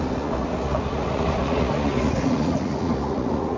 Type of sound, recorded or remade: remade